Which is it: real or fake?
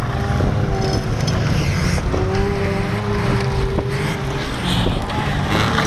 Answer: real